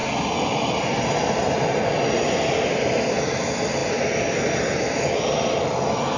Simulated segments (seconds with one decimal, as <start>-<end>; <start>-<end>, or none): none